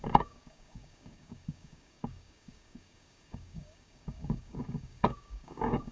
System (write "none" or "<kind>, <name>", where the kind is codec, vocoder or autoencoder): codec, DAC